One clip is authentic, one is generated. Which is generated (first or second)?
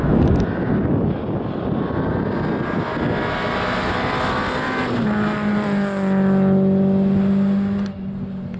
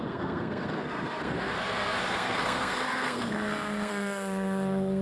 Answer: second